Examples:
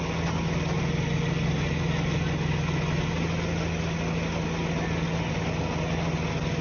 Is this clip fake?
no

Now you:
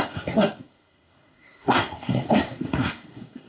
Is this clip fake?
yes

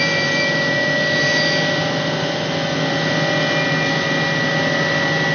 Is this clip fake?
no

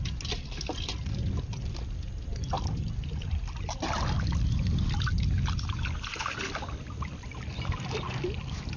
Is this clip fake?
no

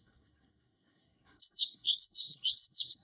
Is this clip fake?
yes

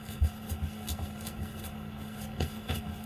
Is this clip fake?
yes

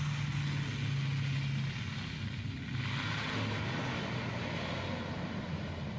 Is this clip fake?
no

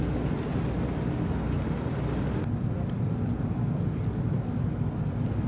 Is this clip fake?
no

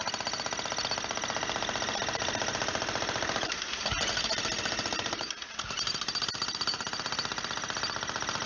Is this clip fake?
no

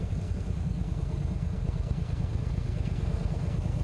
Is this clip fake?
yes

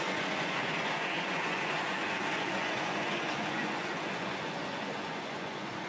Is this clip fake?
yes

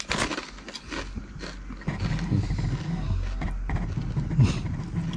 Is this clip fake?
no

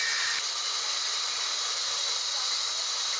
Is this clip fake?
no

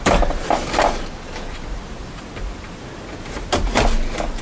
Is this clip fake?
no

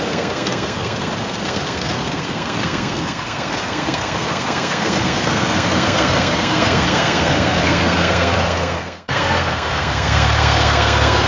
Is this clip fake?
yes